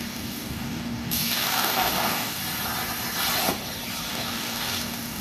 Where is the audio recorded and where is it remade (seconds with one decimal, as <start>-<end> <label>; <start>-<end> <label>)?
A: 0.0-2.4 remade; 2.4-4.1 recorded; 4.1-5.2 remade